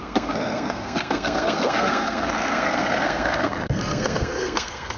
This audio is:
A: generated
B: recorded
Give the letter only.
A